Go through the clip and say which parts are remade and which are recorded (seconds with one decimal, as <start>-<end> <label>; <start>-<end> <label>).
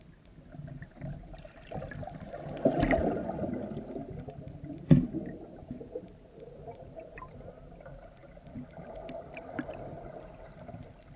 0.0-11.2 recorded